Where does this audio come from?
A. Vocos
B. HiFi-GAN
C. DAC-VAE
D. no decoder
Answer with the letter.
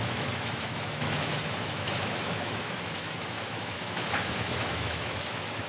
C